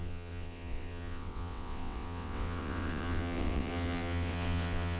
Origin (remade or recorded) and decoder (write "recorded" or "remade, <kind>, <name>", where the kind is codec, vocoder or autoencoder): remade, vocoder, WaveNeXt